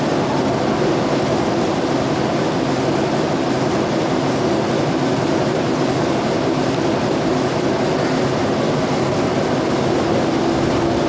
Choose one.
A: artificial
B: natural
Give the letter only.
B